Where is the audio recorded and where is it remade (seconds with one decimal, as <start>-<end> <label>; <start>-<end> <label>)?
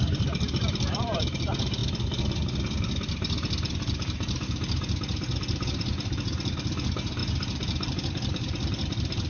0.0-1.8 remade; 1.8-3.7 recorded; 3.7-9.3 remade